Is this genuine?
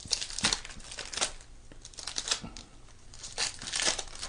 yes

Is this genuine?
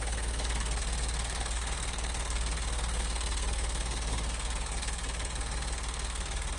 no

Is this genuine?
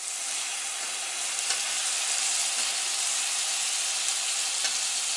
yes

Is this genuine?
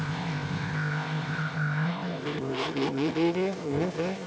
no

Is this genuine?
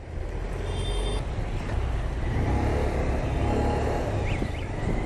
yes